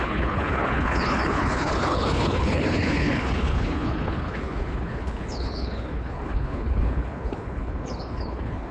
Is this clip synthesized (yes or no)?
yes